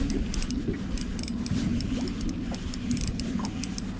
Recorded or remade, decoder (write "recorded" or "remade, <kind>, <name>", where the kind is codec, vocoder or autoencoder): recorded